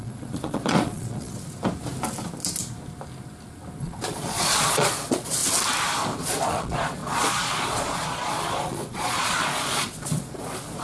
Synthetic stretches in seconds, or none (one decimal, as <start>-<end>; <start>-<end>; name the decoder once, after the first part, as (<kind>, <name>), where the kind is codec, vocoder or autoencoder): 0.0-1.3 (vocoder, Vocos); 3.8-5.4; 6.2-10.8